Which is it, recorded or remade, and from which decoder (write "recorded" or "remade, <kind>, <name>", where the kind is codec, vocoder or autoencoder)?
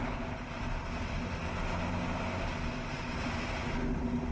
recorded